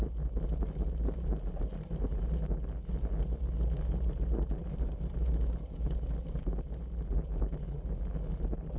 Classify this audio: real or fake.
real